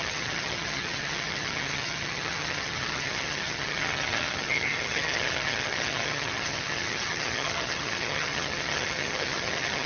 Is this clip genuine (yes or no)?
no